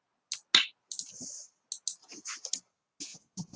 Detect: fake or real real